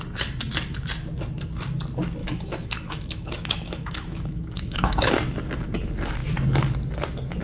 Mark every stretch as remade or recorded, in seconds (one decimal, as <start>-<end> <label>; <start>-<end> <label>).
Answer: 0.0-2.2 recorded; 2.2-5.1 remade; 5.1-7.4 recorded